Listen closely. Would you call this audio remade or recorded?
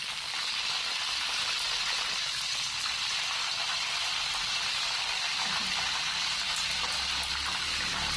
remade